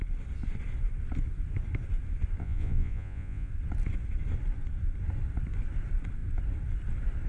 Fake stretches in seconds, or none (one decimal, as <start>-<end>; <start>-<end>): 2.4-3.5